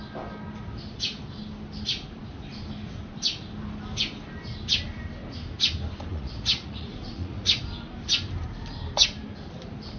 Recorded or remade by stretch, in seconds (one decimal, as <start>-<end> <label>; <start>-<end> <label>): 0.0-6.1 recorded; 6.1-7.6 remade; 7.6-10.0 recorded